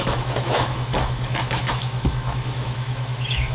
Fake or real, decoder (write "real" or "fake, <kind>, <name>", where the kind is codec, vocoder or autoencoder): fake, autoencoder, DAC-VAE